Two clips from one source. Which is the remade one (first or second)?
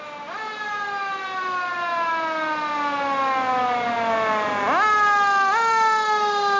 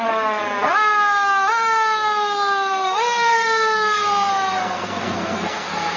second